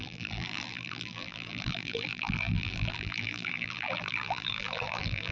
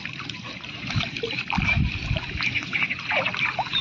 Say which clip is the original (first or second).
second